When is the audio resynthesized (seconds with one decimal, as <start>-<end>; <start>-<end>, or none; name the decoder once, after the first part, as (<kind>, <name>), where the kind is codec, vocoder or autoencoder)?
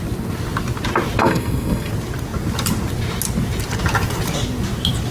1.2-1.9 (codec, SNAC)